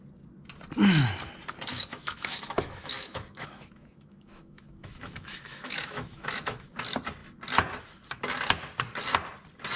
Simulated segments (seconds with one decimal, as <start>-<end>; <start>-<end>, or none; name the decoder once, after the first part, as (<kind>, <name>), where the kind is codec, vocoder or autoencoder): 1.7-6.7 (autoencoder, DAC-VAE)